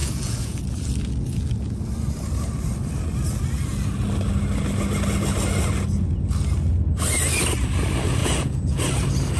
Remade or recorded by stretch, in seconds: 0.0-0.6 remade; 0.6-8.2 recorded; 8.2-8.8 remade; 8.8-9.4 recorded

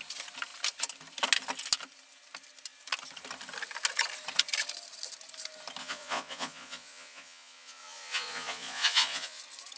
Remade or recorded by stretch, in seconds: 0.0-5.8 recorded; 5.8-9.4 remade; 9.4-9.8 recorded

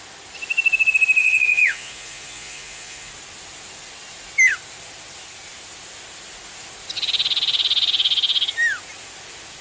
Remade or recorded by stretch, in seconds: 0.0-1.2 recorded; 1.2-3.1 remade; 3.1-9.6 recorded

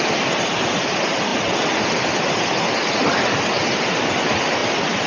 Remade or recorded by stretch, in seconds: 0.0-5.1 recorded

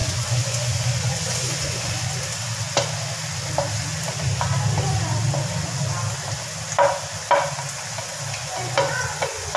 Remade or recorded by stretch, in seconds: 0.0-2.2 remade; 2.2-8.4 recorded; 8.4-9.6 remade

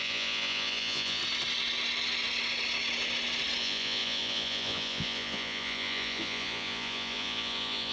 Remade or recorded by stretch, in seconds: 0.0-1.2 remade; 1.2-3.6 recorded; 3.6-7.9 remade

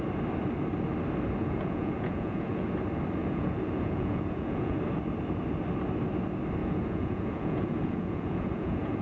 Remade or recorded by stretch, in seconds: 0.0-1.4 recorded; 1.4-2.7 remade; 2.7-3.2 recorded; 3.2-4.8 remade; 4.8-6.6 recorded; 6.6-9.0 remade